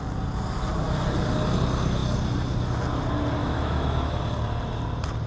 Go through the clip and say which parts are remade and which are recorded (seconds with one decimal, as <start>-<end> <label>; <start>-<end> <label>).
0.0-3.4 recorded; 3.4-4.2 remade; 4.2-5.3 recorded